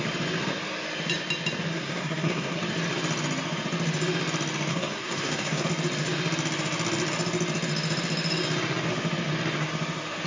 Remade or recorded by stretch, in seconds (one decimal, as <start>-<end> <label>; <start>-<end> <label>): 0.0-1.7 recorded; 1.7-2.6 remade; 2.6-4.7 recorded; 4.7-5.7 remade; 5.7-10.3 recorded